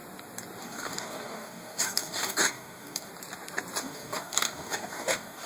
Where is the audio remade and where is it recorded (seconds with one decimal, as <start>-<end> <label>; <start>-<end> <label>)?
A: 0.0-0.6 recorded; 0.6-3.1 remade; 3.1-3.8 recorded; 3.8-5.5 remade